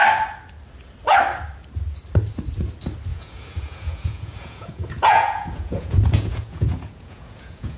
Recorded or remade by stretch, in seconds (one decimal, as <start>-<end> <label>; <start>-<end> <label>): 0.0-3.1 recorded; 3.1-7.8 remade